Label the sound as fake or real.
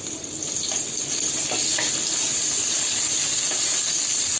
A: real